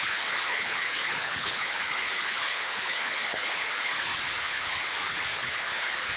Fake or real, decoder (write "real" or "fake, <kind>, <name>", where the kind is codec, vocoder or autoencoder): fake, codec, HILCodec